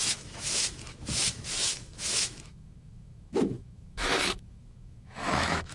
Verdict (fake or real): fake